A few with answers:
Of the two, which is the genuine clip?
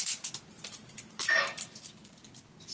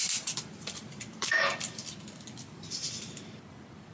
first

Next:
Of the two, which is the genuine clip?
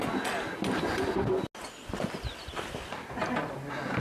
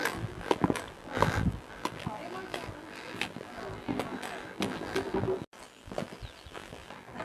first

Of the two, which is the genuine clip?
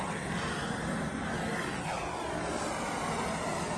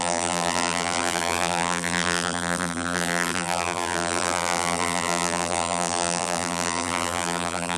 first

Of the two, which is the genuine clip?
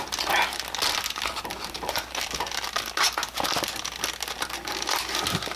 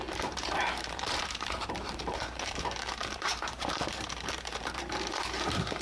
first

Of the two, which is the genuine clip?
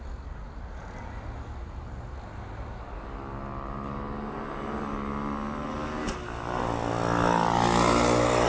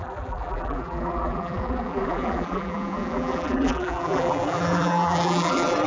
first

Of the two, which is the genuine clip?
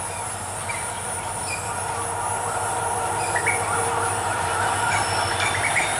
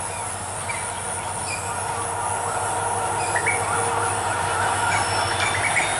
second